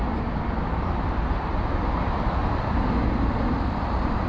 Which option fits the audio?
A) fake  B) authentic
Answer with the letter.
B